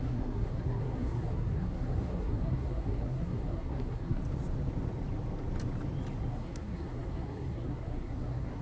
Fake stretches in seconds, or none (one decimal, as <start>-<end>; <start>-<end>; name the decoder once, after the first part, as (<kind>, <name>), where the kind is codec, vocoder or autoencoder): 0.0-4.2 (codec, SNAC); 6.3-8.6